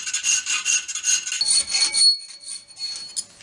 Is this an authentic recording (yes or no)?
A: yes